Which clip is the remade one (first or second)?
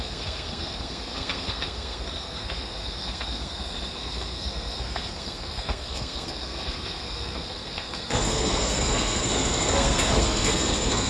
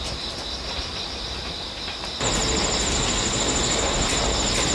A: first